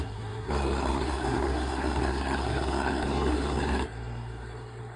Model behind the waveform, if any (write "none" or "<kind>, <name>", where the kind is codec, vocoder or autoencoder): codec, SNAC